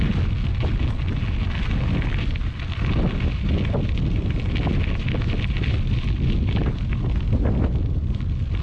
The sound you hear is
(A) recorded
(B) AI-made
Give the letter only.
A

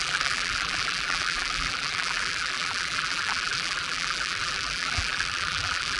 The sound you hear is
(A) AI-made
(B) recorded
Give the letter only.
A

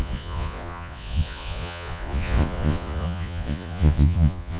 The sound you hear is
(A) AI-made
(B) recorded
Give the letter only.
A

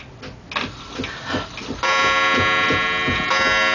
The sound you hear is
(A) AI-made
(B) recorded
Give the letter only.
B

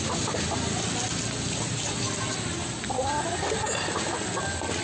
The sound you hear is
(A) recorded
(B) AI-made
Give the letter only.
A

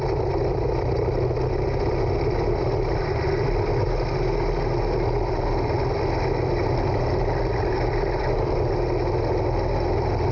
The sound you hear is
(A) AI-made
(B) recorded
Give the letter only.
B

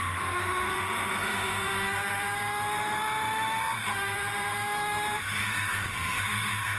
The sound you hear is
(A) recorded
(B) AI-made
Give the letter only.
B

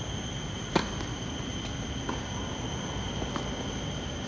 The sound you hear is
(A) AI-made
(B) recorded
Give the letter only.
B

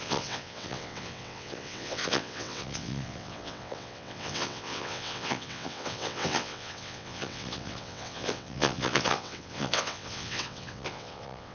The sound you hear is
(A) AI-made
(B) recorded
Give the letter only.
A